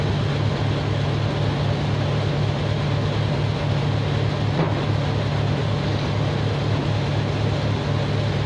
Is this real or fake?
real